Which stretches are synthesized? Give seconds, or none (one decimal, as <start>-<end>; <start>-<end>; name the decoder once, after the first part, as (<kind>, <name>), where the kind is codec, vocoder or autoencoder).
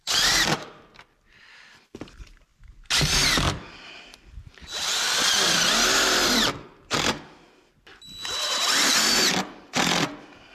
none